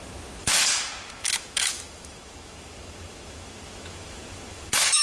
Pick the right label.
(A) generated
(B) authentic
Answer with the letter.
A